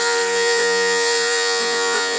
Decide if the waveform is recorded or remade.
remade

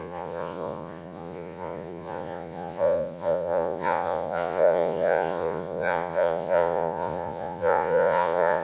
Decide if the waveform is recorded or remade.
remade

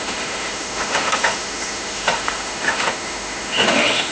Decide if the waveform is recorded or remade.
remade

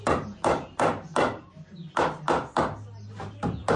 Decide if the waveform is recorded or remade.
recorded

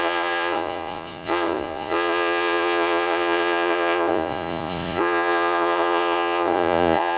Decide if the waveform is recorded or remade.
remade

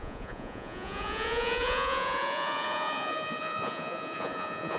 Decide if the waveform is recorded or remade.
remade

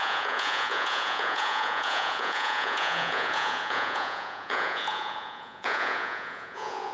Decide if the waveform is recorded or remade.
remade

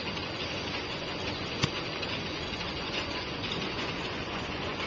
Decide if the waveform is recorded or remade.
remade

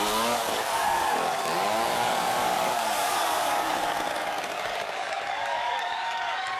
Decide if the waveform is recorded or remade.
remade